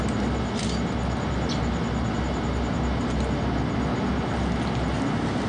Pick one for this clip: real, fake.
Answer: real